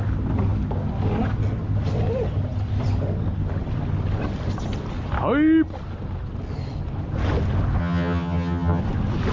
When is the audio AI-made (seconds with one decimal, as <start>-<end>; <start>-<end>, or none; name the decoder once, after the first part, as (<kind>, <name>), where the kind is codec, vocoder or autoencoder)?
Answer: 7.8-8.8 (vocoder, HiFi-GAN)